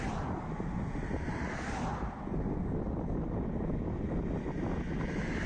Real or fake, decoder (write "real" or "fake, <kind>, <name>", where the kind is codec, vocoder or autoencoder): real